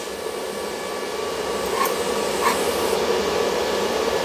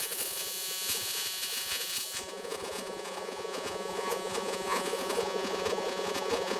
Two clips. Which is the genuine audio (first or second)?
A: first